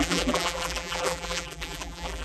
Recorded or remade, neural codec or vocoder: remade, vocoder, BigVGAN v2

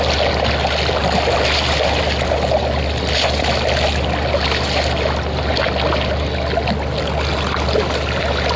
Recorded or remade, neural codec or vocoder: recorded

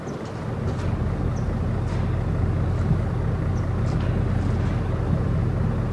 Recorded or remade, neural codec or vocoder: recorded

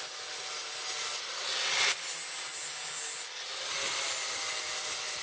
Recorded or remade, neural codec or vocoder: recorded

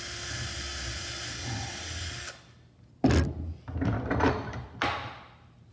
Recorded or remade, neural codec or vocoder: recorded